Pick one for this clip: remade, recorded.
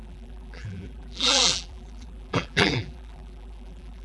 remade